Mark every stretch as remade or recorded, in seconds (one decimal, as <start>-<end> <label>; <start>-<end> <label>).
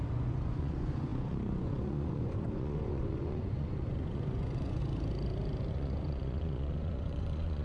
0.0-4.8 remade; 4.8-5.7 recorded; 5.7-7.6 remade